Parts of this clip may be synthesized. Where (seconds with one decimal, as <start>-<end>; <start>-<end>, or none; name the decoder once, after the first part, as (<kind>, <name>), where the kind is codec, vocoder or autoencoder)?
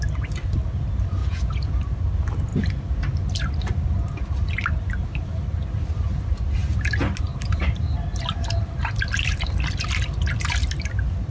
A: 1.2-1.7 (vocoder, Vocos)